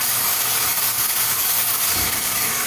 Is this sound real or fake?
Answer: fake